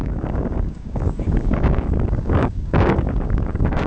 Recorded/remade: remade